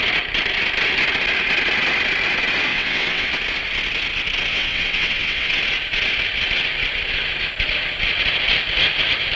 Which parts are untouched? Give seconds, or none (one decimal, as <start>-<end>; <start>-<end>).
0.0-2.7; 3.3-4.5; 5.5-9.4